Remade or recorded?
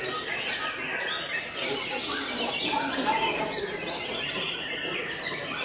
recorded